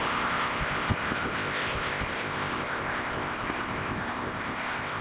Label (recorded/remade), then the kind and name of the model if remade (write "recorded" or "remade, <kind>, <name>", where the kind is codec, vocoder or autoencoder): remade, codec, ZipCodec